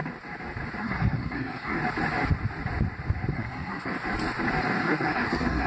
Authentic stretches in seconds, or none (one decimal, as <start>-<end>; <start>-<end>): 0.0-0.8; 1.8-3.3; 3.9-4.8